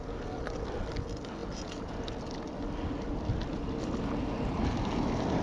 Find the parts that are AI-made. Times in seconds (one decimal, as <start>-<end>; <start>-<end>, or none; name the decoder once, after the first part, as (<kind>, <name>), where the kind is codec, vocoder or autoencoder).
none